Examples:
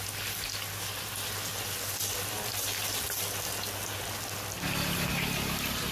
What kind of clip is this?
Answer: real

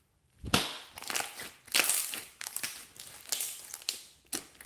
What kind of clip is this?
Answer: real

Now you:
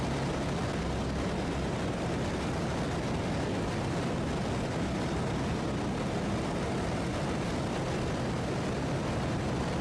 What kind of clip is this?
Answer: real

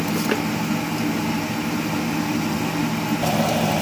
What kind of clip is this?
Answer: real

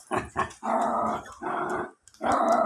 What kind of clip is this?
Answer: real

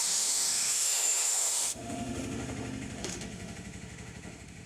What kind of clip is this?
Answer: fake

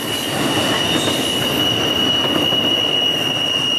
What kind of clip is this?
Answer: real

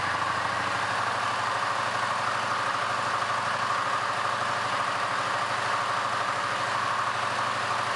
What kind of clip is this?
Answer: real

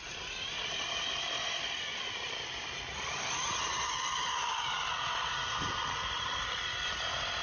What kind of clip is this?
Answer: real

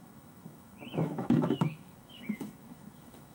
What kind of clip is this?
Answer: fake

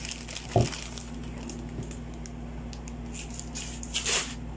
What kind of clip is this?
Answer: real